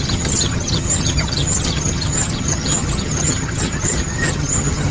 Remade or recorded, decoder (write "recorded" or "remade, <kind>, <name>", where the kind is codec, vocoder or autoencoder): remade, vocoder, HiFi-GAN